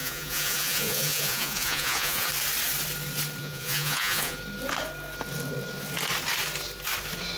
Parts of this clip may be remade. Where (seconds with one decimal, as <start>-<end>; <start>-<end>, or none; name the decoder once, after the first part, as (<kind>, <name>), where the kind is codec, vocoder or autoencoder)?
0.0-2.3 (vocoder, Vocos); 3.4-4.4